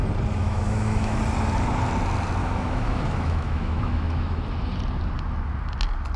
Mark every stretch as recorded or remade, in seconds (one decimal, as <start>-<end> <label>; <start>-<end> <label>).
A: 0.0-0.4 recorded; 0.4-1.2 remade; 1.2-2.4 recorded; 2.4-4.4 remade; 4.4-6.2 recorded